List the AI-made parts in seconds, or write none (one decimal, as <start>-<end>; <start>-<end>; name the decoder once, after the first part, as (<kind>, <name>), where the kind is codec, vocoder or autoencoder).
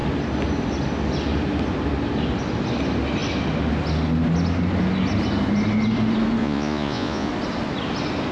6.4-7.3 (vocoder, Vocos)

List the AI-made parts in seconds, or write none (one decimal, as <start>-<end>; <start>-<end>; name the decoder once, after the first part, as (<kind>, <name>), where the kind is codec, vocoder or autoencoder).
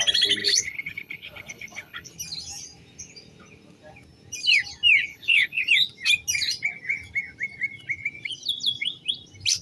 0.4-2.1 (codec, HILCodec); 5.1-5.7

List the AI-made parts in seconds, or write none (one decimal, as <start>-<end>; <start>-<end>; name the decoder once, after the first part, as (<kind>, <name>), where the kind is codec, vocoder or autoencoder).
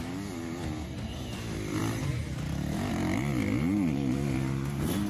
none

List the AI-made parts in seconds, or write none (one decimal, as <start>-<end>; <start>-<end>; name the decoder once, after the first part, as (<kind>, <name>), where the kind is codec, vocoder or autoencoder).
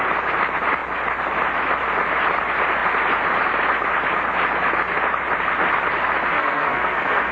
6.3-7.3 (codec, SNAC)